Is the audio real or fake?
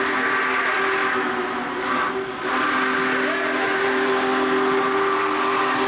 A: real